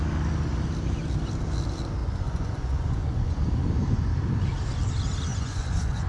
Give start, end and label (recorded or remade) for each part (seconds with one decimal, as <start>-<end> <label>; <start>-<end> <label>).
0.0-2.0 recorded; 2.0-3.4 remade; 3.4-5.3 recorded; 5.3-6.1 remade

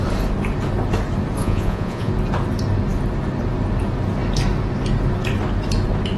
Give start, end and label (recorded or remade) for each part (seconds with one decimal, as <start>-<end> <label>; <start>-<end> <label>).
0.0-1.4 recorded; 1.4-2.1 remade; 2.1-6.2 recorded

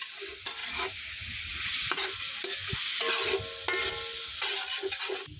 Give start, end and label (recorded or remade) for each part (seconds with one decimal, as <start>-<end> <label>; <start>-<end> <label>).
0.0-5.4 recorded

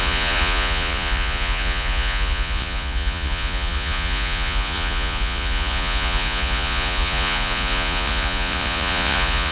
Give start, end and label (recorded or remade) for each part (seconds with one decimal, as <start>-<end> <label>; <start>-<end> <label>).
0.0-9.5 remade

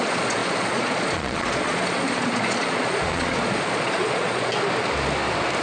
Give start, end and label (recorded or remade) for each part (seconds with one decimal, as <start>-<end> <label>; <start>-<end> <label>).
0.0-4.5 remade; 4.5-5.6 recorded